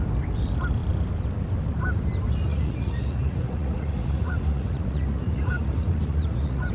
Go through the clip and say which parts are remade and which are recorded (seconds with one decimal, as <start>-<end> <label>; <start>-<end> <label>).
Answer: 0.0-2.5 recorded; 2.5-6.7 remade